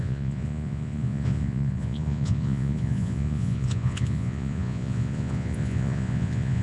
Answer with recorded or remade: remade